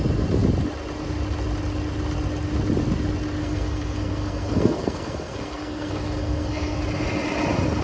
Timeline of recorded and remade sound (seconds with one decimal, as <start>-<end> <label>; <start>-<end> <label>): 0.0-3.4 recorded; 3.4-6.8 remade; 6.8-7.8 recorded